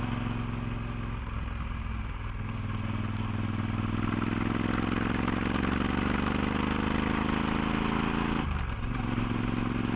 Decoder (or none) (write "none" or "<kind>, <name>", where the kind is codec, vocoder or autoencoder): none